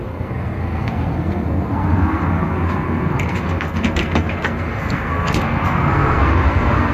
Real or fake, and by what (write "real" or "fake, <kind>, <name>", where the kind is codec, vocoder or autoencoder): fake, codec, SNAC